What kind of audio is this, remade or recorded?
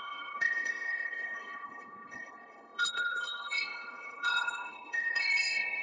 remade